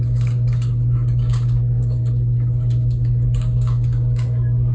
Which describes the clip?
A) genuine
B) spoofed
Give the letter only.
B